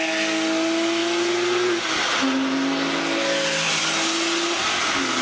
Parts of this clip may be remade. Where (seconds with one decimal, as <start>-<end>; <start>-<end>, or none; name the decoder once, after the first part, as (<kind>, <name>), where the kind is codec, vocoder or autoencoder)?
none

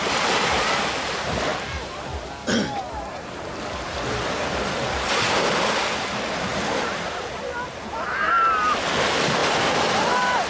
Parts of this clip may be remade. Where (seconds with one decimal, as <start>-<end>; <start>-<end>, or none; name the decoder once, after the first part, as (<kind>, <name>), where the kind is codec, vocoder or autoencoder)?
none

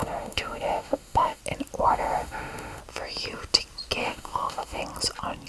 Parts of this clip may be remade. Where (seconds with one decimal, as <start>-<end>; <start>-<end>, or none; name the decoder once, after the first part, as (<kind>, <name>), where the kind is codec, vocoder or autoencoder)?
0.0-1.4 (autoencoder, DAC-VAE); 1.9-2.8; 4.0-4.8

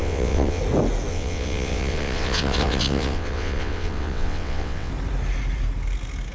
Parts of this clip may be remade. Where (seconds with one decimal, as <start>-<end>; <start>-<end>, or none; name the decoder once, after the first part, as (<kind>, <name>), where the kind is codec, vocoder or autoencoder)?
0.0-0.6 (vocoder, WaveNeXt); 1.1-4.9

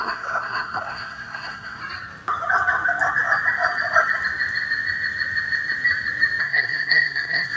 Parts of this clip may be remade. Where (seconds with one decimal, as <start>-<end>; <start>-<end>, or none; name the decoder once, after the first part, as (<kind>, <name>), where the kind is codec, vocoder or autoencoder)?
0.0-1.8 (codec, SNAC); 6.4-7.6